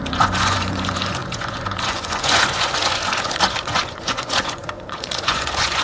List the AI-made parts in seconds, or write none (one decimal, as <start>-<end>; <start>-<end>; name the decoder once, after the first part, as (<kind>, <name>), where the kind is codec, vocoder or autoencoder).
0.0-5.8 (vocoder, Vocos)

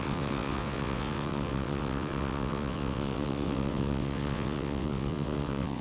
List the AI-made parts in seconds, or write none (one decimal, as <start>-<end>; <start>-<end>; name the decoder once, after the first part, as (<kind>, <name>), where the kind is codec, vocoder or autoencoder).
0.0-5.8 (vocoder, WaveNeXt)